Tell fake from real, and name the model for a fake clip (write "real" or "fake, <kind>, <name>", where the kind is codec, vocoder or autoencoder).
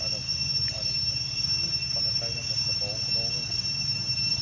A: real